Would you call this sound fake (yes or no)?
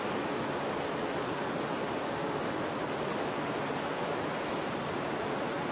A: no